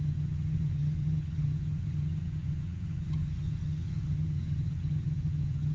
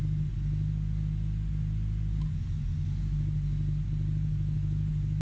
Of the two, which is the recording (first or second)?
second